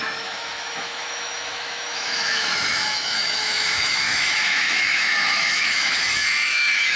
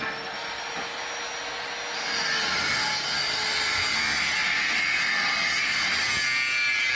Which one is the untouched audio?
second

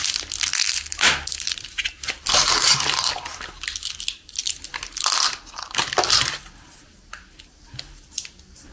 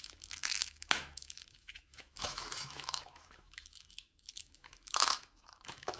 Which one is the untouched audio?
first